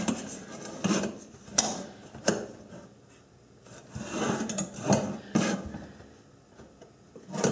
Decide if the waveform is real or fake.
real